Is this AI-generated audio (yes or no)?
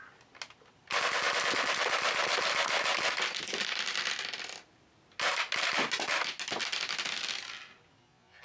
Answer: no